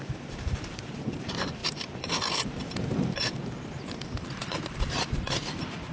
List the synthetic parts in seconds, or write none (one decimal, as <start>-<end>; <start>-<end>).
0.0-5.9